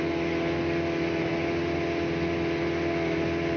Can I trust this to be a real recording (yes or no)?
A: yes